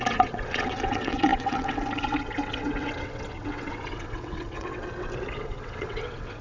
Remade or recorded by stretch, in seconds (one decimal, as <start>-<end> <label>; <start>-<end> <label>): 0.0-6.4 remade